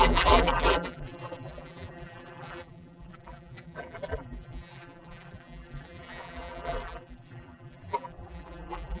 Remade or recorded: remade